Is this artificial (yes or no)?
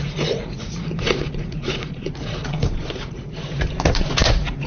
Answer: yes